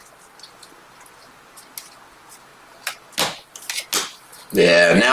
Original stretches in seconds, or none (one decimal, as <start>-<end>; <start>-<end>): 0.0-5.1

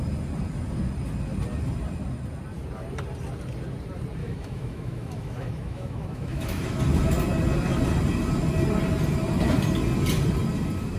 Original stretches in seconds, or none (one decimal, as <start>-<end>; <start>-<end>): 0.0-4.2; 6.8-11.0